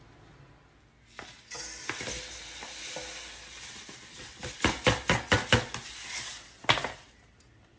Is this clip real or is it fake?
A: real